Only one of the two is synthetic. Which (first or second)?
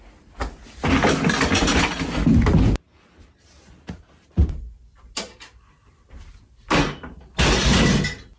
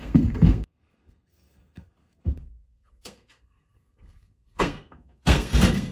second